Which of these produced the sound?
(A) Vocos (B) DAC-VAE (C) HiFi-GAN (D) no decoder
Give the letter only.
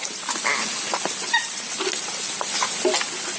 D